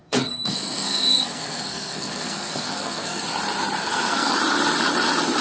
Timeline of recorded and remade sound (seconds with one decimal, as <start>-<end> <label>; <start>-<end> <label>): 0.0-3.2 remade; 3.2-3.8 recorded; 3.8-4.4 remade; 4.4-5.4 recorded